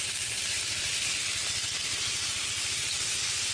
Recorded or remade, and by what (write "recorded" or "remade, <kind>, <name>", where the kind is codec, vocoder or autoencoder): recorded